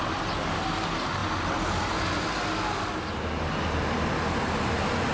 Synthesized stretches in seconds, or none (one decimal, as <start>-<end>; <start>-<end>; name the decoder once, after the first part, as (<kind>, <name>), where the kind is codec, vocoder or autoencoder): none